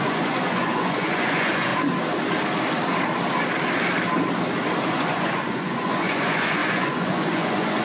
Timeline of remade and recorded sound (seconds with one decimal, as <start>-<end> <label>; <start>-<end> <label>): 0.0-1.7 remade; 1.7-4.9 recorded; 4.9-7.8 remade